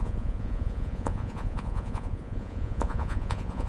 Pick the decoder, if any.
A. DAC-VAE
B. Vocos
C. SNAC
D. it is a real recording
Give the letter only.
B